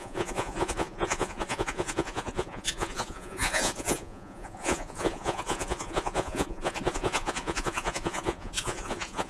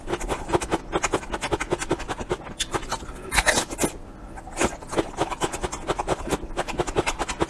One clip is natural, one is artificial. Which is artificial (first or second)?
first